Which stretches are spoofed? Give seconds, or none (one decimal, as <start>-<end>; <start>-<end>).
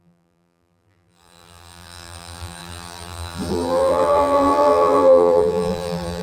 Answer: 0.0-6.2